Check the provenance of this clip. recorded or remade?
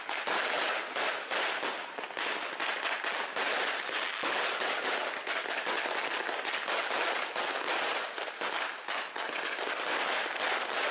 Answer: recorded